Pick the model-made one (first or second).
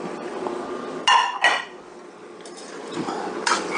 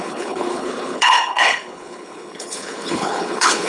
second